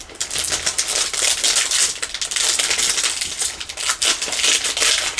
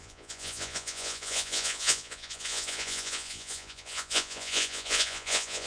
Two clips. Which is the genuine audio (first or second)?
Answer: first